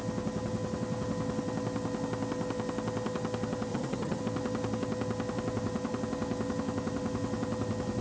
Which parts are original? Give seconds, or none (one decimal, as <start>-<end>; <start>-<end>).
0.0-3.7; 4.2-8.0